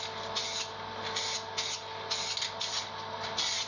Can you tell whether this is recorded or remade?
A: recorded